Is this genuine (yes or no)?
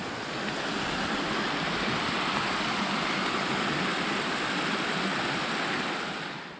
yes